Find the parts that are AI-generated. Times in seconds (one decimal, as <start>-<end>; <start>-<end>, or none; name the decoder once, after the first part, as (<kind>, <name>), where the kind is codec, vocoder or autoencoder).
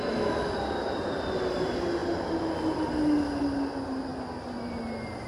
none